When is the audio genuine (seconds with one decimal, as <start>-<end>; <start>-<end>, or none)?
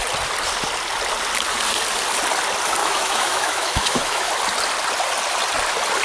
0.0-2.8; 4.3-6.0